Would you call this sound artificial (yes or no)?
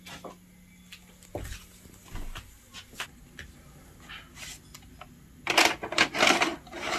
no